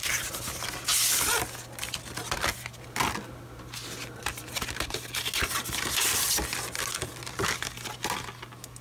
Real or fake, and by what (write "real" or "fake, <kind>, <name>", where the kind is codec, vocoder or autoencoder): real